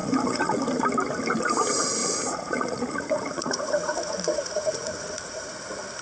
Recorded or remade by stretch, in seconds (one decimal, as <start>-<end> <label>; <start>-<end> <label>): 0.0-0.6 remade; 0.6-2.0 recorded; 2.0-5.6 remade; 5.6-6.0 recorded